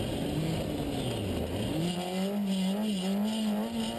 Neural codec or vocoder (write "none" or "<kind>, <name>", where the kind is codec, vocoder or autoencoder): none